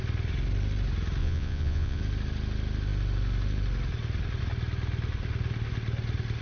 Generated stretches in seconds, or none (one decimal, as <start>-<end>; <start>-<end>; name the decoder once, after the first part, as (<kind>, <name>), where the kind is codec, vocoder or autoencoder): 1.2-2.0 (vocoder, Vocos)